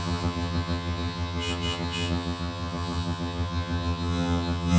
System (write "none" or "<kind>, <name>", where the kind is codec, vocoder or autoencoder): vocoder, HiFi-GAN